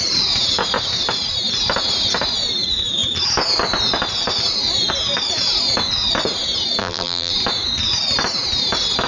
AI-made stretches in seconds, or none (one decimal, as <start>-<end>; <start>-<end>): 6.8-7.3